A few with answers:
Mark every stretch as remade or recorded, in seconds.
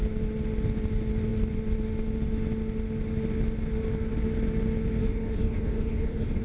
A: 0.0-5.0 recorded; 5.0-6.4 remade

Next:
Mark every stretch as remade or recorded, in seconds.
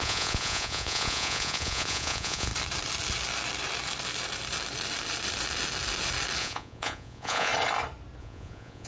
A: 0.0-2.5 remade; 2.5-6.4 recorded; 6.4-7.5 remade; 7.5-8.2 recorded; 8.2-8.9 remade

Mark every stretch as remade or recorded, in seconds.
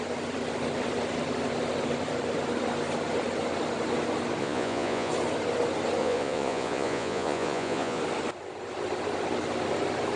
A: 0.0-4.4 recorded; 4.4-5.1 remade; 5.1-6.0 recorded; 6.0-8.0 remade; 8.0-10.2 recorded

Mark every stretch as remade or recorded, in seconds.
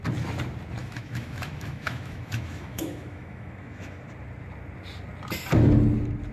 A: 0.0-0.8 recorded; 0.8-4.0 remade; 4.0-6.3 recorded